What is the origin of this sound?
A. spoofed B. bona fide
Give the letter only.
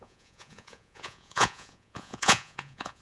A